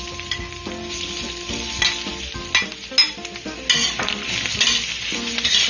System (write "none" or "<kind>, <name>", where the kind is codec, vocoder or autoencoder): none